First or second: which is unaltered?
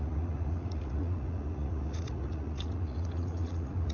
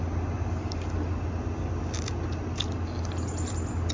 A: second